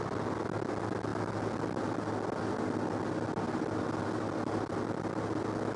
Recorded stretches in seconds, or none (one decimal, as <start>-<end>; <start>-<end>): 0.0-5.8

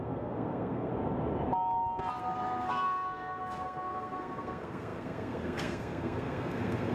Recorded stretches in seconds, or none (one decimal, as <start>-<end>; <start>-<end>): 0.9-2.2

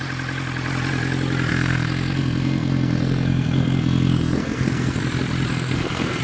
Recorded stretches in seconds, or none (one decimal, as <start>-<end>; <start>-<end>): 0.0-1.5; 5.0-5.5

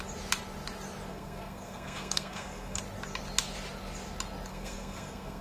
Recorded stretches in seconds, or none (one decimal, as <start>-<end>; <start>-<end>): 0.0-1.1; 2.8-4.5

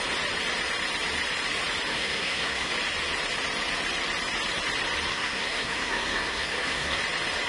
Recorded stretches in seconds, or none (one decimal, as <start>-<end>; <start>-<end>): 0.0-1.9; 2.7-5.1; 7.0-7.5